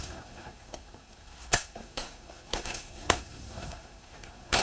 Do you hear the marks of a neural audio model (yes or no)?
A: yes